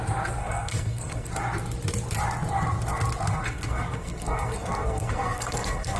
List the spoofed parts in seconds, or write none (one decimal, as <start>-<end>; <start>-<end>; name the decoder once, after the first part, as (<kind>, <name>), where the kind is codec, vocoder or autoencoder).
0.4-1.3 (codec, SNAC); 3.3-6.0